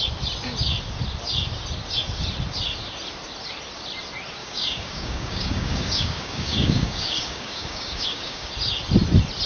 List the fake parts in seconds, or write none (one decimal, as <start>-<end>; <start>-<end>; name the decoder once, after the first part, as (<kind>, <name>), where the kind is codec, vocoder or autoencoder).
4.4-8.5 (codec, DAC)